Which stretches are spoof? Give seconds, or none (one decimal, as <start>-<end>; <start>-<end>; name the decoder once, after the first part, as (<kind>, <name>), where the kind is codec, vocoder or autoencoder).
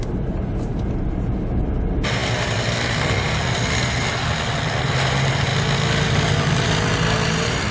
none